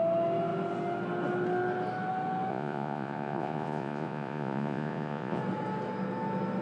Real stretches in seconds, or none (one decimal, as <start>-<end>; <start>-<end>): 0.0-2.5; 5.4-6.6